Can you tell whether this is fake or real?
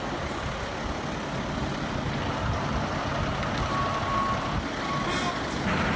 real